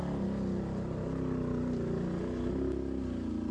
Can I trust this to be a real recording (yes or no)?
yes